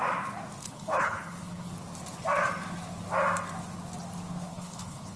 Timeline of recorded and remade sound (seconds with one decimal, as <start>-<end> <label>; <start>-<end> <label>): 0.0-0.6 recorded; 0.6-1.7 remade; 1.7-4.5 recorded; 4.5-5.2 remade